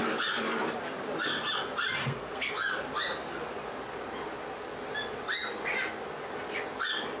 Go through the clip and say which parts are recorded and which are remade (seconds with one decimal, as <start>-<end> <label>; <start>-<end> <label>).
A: 0.0-2.0 recorded; 2.0-2.5 remade; 2.5-7.2 recorded